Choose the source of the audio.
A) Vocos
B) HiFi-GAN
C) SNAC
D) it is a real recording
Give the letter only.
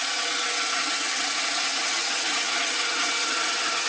B